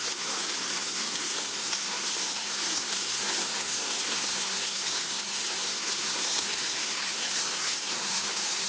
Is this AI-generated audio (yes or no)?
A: yes